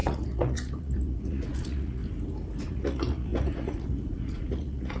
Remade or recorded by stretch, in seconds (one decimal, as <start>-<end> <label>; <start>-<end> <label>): 0.0-2.0 remade; 2.0-2.6 recorded; 2.6-5.0 remade